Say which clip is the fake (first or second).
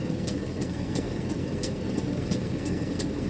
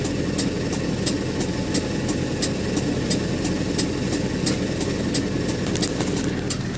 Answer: first